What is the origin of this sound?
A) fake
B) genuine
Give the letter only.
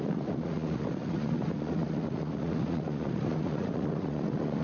A